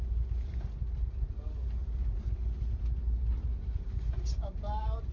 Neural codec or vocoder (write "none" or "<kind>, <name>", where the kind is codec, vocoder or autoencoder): none